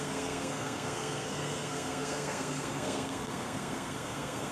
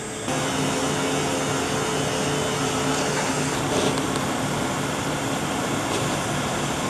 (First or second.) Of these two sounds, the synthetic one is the first